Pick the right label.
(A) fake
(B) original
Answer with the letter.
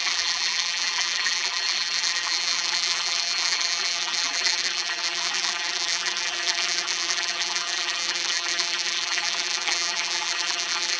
A